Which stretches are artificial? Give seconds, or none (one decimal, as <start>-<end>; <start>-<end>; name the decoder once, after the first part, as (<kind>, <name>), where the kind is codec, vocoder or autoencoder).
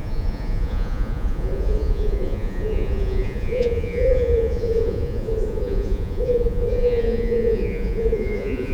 0.0-8.7 (vocoder, Vocos)